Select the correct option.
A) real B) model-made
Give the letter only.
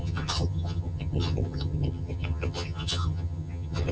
B